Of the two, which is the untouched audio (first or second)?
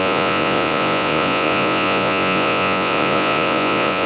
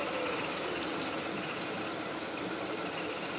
second